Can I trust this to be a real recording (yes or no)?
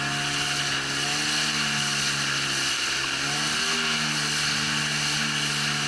yes